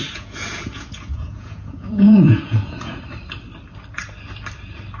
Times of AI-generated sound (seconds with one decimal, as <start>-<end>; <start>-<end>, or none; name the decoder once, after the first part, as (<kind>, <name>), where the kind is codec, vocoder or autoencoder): 0.0-3.0 (vocoder, Vocos)

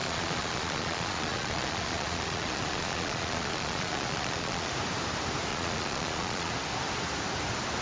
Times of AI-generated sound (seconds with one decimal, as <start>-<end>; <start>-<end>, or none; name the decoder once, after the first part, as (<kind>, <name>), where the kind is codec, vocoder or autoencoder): 0.0-4.7 (vocoder, Vocos); 5.5-6.5

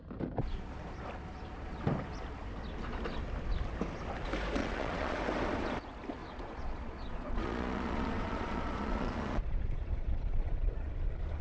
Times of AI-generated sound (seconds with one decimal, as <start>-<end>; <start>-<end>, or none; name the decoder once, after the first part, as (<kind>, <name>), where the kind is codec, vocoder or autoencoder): 4.6-5.2 (vocoder, Vocos); 6.2-10.9

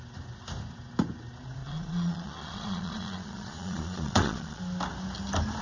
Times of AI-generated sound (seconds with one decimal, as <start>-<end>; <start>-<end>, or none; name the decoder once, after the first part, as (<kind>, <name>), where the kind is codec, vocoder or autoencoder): 1.6-4.6 (vocoder, Vocos)

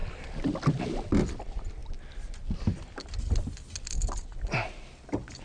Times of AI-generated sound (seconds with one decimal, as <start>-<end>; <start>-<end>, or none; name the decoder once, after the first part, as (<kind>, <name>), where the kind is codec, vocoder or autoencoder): none

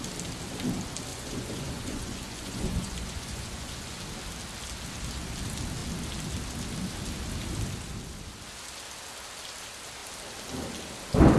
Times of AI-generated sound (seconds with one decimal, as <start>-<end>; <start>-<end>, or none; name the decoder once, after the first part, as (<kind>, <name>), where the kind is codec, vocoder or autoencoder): 1.1-4.0 (vocoder, Vocos)